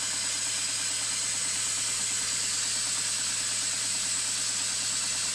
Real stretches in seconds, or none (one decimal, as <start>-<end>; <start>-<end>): 0.0-5.3